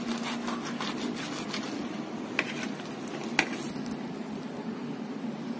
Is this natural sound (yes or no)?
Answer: yes